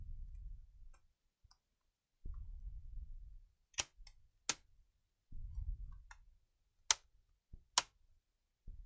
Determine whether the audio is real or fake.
real